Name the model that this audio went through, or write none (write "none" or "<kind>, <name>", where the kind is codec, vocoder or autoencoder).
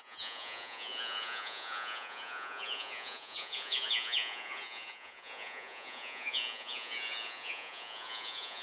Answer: vocoder, Vocos